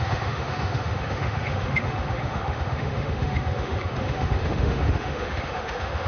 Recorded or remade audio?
remade